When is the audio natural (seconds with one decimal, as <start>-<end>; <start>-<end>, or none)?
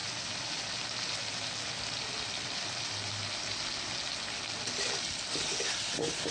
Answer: 0.0-6.3